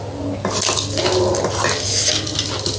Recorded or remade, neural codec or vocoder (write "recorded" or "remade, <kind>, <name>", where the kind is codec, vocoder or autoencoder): recorded